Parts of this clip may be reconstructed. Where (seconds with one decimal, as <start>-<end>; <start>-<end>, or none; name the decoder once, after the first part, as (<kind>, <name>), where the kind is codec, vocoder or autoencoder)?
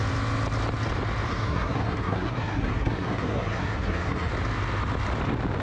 1.3-4.3 (codec, SNAC)